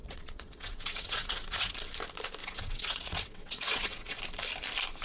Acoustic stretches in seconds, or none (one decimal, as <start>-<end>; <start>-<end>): 1.7-2.4; 4.2-5.0